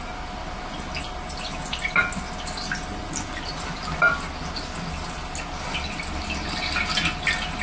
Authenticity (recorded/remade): recorded